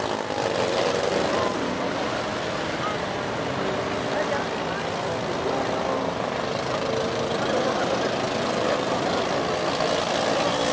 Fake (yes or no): no